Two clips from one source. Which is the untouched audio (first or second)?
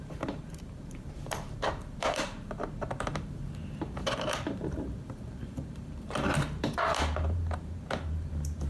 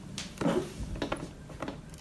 second